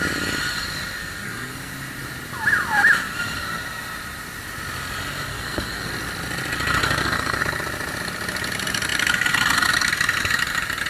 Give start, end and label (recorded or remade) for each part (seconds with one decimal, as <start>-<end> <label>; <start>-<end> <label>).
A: 0.0-1.0 recorded; 1.0-1.7 remade; 1.7-5.3 recorded; 5.3-5.9 remade; 5.9-6.8 recorded; 6.8-7.4 remade; 7.4-10.9 recorded